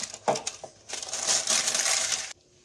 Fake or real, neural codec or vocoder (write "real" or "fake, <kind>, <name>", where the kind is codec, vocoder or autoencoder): real